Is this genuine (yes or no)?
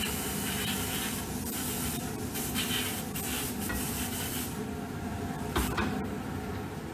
no